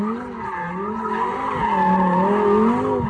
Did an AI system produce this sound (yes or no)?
no